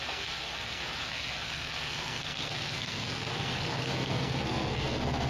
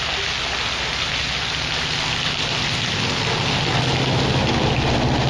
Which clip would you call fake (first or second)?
first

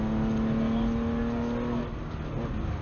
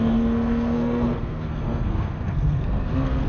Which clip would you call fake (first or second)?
second